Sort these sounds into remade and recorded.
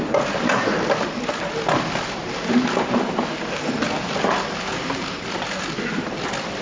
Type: recorded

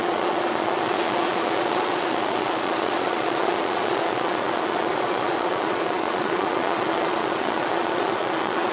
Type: remade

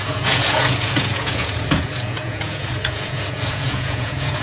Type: remade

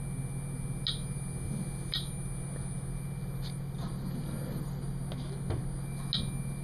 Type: recorded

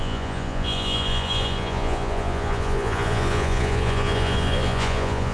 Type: remade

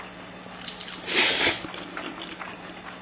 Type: recorded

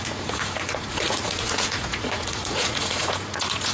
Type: remade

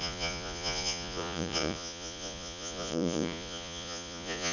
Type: remade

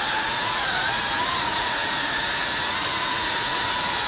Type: remade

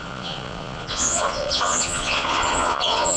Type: remade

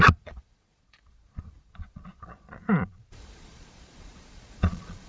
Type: remade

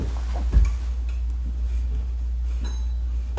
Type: recorded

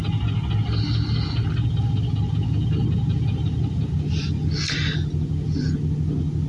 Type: recorded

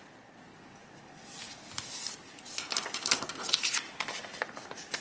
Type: recorded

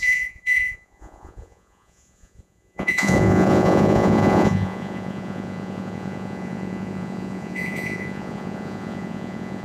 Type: remade